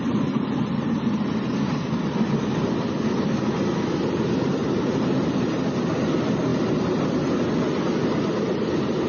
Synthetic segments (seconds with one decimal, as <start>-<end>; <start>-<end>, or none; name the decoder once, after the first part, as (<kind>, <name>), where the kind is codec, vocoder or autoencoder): none